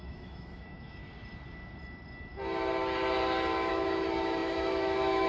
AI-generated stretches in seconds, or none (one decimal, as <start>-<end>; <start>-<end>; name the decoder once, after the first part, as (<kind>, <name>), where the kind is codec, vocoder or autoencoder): 0.0-1.0 (autoencoder, DAC-VAE); 3.7-5.3